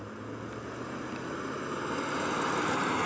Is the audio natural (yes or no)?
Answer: yes